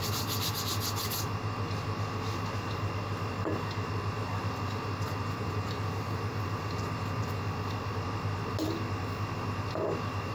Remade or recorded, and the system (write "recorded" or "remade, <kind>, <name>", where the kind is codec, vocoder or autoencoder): recorded